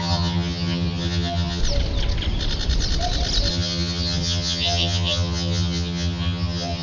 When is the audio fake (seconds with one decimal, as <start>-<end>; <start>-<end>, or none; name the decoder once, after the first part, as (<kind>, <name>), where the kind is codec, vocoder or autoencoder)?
0.0-1.6 (vocoder, HiFi-GAN); 3.5-6.8